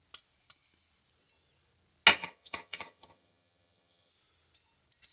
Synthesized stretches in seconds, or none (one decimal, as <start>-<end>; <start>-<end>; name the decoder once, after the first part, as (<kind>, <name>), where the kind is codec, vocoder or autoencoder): 2.2-4.1 (vocoder, HiFi-GAN)